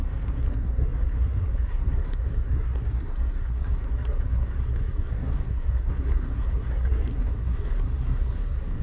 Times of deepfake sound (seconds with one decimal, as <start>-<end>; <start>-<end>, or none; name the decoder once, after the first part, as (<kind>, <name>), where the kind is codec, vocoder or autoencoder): 0.0-8.8 (codec, SNAC)